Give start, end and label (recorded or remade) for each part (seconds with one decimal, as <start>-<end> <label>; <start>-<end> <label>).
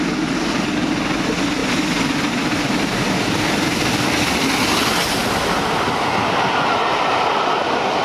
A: 0.0-1.6 recorded; 1.6-3.3 remade; 3.3-8.0 recorded